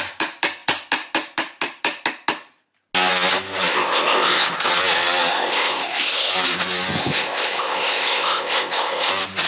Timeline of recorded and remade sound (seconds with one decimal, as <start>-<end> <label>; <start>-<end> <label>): 0.0-3.7 recorded; 3.7-4.7 remade; 4.7-5.3 recorded; 5.3-6.3 remade; 6.3-7.0 recorded; 7.0-9.1 remade; 9.1-9.5 recorded